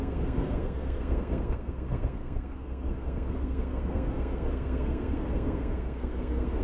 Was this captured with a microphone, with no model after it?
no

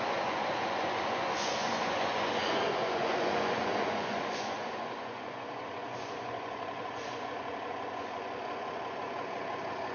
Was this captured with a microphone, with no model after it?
no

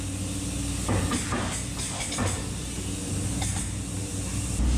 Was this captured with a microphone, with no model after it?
yes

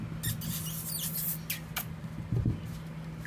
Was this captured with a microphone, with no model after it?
yes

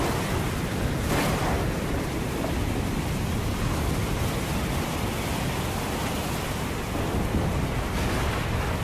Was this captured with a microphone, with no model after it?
yes